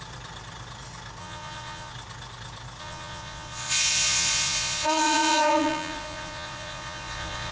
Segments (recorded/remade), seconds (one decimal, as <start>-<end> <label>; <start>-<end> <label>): 0.0-1.2 recorded; 1.2-1.9 remade; 1.9-2.8 recorded; 2.8-7.5 remade